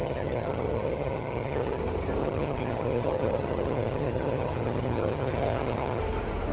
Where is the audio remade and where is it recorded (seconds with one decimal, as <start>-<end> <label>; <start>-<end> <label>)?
0.0-1.8 remade; 1.8-2.2 recorded; 2.2-6.0 remade; 6.0-6.5 recorded